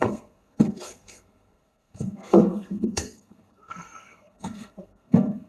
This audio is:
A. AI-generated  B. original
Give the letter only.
A